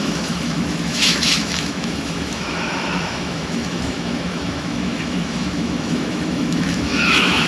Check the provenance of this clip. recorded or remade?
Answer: remade